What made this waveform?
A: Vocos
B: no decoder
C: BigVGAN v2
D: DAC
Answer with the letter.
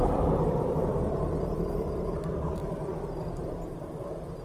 C